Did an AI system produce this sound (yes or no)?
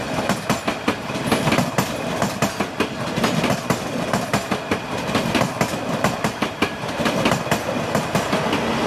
no